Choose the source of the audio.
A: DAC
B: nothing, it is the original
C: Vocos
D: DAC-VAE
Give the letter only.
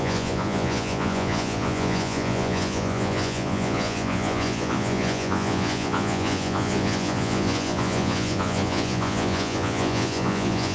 C